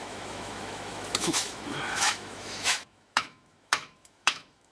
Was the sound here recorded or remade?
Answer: remade